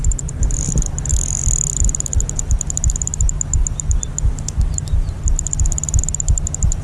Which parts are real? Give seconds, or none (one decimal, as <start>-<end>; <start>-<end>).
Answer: 0.0-6.8